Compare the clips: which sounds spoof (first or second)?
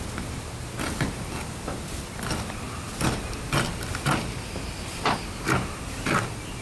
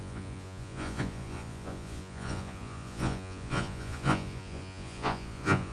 second